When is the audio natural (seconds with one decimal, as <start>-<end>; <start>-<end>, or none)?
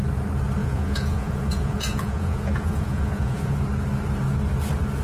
0.0-0.6; 3.6-5.0